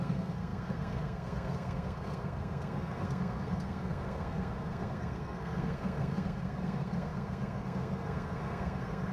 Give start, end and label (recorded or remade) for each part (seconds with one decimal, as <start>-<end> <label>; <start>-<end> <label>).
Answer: 0.0-9.1 remade